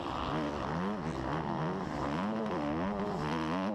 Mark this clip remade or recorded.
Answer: recorded